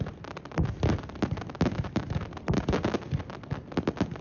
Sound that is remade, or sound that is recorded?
recorded